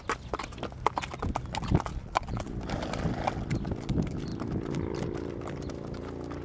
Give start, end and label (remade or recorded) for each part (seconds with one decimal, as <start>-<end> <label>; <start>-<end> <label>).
0.0-1.9 recorded; 1.9-2.5 remade; 2.5-6.4 recorded